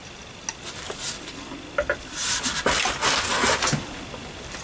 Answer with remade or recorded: recorded